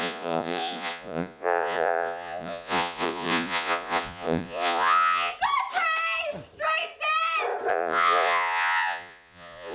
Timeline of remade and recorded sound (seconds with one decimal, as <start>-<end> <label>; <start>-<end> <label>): 0.0-5.3 remade; 5.3-7.7 recorded; 7.7-9.7 remade